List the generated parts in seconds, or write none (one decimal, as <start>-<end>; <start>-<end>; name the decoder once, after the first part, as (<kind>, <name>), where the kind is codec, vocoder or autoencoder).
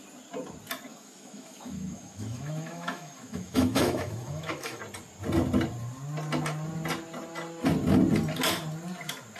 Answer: 0.9-4.8 (autoencoder, DAC-VAE)